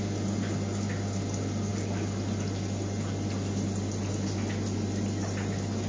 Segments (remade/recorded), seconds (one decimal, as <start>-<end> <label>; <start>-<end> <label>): 0.0-5.9 recorded